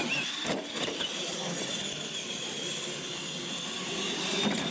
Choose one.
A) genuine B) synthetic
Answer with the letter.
A